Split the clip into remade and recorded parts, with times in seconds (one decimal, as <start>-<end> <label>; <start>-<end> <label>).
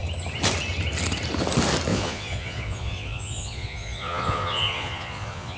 0.0-1.9 recorded; 1.9-5.6 remade